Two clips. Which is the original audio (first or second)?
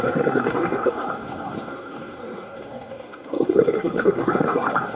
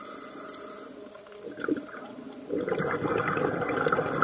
second